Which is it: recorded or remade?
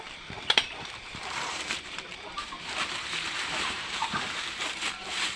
remade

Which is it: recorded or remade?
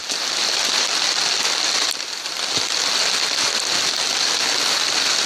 recorded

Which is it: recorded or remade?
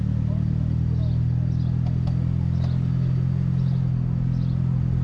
recorded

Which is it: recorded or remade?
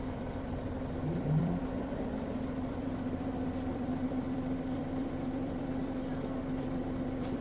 remade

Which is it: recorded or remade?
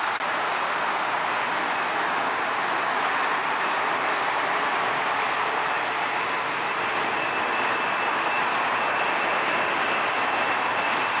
recorded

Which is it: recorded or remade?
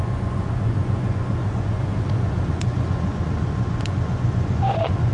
remade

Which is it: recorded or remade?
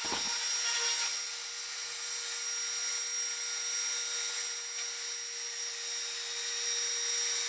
recorded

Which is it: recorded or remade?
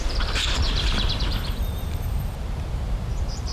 remade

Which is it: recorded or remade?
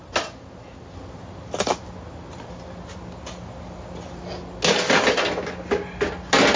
recorded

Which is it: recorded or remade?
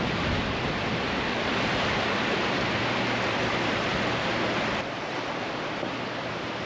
remade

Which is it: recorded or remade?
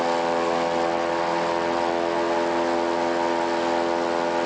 recorded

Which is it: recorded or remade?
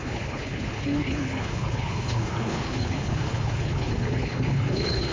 remade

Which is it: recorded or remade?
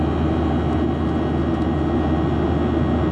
recorded